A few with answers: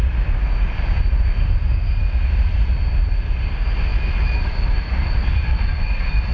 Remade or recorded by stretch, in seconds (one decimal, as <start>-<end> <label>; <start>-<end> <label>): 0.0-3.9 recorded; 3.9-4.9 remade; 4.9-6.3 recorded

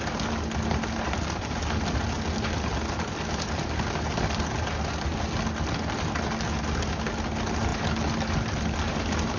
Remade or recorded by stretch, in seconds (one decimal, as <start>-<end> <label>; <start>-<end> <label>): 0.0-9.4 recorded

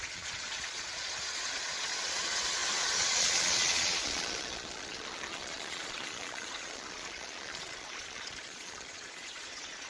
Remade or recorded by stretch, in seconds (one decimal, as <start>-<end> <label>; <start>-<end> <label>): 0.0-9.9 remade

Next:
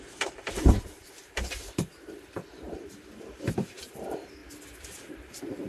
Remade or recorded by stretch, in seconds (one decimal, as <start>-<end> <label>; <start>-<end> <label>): 0.0-4.4 remade; 4.4-5.1 recorded; 5.1-5.7 remade